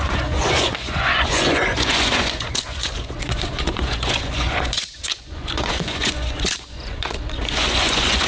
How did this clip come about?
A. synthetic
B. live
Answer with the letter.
A